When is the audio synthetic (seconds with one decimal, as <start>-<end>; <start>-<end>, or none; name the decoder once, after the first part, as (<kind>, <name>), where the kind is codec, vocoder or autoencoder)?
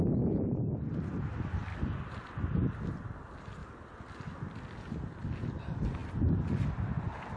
3.6-4.4 (vocoder, BigVGAN v2); 6.0-6.7